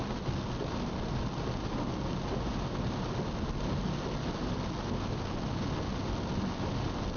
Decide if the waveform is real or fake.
real